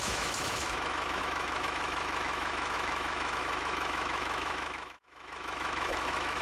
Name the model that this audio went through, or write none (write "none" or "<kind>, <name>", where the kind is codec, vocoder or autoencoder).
autoencoder, DAC-VAE